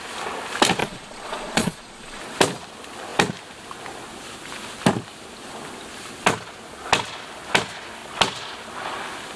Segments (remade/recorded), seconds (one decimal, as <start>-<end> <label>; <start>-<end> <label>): 0.0-0.8 recorded; 0.8-2.2 remade; 2.2-9.4 recorded